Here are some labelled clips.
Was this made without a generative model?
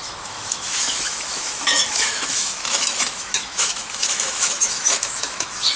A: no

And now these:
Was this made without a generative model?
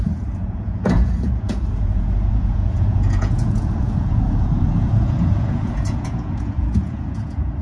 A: no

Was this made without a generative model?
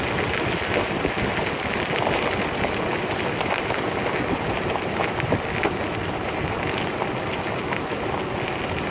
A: yes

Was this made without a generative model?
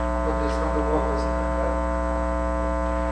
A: yes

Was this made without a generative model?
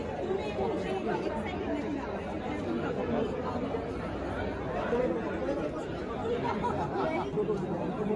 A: yes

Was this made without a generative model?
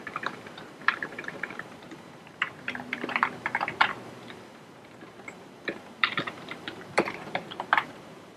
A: no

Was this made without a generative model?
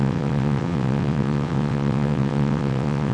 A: no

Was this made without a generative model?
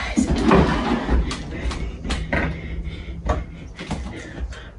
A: yes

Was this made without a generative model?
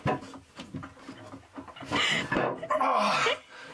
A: yes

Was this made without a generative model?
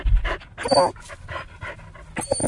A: yes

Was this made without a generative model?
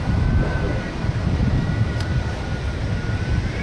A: no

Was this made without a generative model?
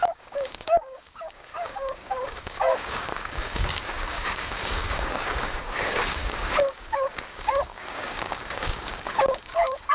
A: no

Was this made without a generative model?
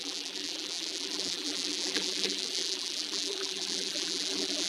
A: no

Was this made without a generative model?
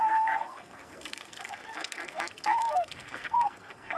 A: no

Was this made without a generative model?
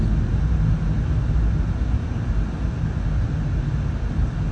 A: yes